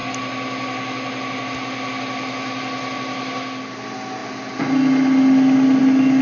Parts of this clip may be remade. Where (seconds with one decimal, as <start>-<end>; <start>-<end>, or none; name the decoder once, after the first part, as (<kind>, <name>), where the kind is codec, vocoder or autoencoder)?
none

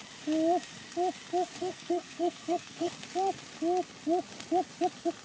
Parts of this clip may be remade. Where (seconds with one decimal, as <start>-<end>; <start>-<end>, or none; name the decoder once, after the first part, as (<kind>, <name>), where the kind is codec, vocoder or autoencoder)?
1.5-2.9 (codec, SNAC)

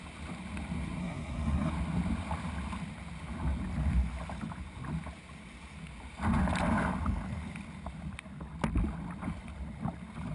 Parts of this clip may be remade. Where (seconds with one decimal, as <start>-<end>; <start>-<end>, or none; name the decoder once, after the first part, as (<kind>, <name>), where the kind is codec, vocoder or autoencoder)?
1.0-1.7 (codec, SNAC)

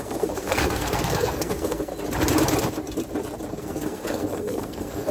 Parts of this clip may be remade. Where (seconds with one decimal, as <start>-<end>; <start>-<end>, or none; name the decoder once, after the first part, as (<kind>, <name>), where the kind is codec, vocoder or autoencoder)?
0.0-1.9 (codec, SNAC); 3.5-5.1

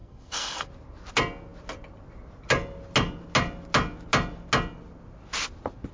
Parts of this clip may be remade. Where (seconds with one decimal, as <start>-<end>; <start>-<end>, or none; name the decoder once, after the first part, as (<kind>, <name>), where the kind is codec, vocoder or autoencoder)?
0.0-0.7 (codec, SNAC)